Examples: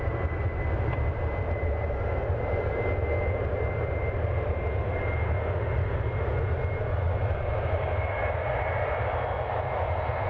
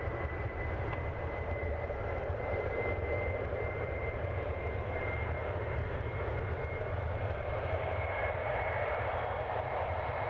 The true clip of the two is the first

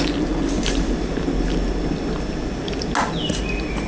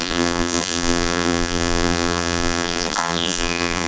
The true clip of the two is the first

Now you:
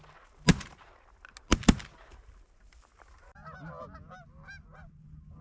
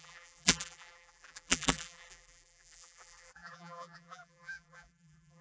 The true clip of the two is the first